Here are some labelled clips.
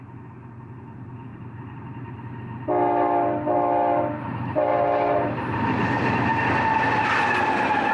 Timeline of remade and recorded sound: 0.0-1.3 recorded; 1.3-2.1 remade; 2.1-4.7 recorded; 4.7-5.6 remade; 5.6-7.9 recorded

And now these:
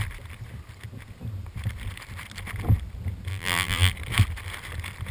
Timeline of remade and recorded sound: 0.0-3.3 recorded; 3.3-3.9 remade; 3.9-5.1 recorded

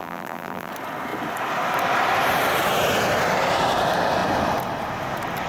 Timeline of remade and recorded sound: 0.0-0.7 remade; 0.7-5.5 recorded